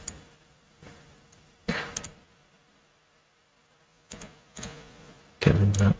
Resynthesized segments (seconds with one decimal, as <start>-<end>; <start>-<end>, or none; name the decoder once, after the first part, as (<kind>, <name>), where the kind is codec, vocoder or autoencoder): 3.9-5.2 (vocoder, Vocos)